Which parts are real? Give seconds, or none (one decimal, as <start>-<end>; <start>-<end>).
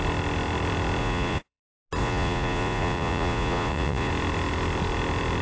0.0-1.0; 1.6-2.0; 4.1-5.4